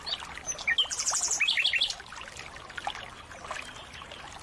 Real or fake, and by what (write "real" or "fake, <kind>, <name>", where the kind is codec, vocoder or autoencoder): real